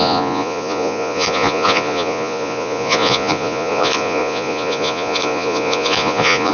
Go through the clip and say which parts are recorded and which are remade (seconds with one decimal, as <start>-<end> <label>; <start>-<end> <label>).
0.0-6.5 remade